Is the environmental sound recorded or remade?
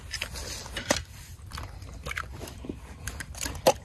recorded